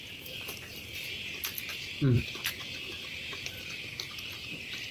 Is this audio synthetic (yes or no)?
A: no